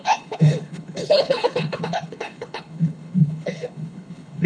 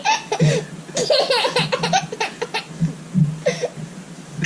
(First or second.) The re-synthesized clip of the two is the first